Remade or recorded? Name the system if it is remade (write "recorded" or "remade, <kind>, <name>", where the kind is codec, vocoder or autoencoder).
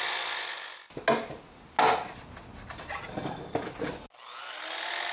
recorded